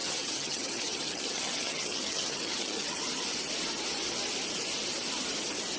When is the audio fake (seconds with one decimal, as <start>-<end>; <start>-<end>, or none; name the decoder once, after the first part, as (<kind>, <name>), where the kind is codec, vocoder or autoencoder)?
0.0-3.0 (vocoder, HiFi-GAN)